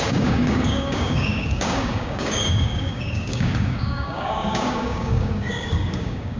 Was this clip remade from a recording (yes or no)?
yes